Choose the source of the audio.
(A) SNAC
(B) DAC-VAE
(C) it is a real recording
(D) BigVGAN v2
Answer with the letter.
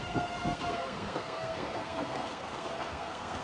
A